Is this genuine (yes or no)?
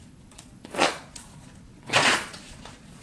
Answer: no